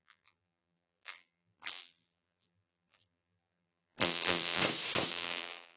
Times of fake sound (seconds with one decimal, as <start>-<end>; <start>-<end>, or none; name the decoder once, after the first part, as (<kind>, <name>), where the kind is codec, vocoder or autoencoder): 0.0-4.6 (vocoder, BigVGAN v2); 5.1-5.8